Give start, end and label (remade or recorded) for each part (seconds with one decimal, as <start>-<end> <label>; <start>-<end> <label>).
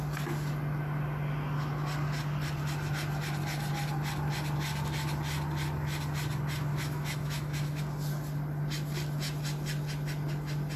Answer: 0.0-6.7 recorded; 6.7-7.8 remade; 7.8-10.8 recorded